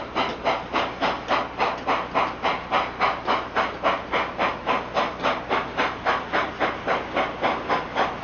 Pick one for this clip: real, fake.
real